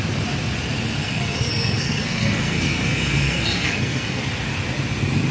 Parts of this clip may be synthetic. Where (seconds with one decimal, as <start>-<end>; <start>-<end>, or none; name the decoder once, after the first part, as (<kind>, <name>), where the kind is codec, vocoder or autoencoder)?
1.0-4.2 (codec, SNAC)